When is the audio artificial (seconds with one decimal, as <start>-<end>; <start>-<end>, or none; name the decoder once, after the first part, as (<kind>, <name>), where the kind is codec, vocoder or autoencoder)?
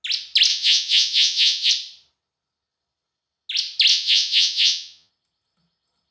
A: 0.5-1.7 (vocoder, Vocos); 3.9-5.1